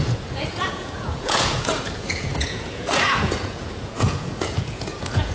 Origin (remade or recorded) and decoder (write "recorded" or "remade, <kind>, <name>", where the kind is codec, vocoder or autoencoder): remade, vocoder, Vocos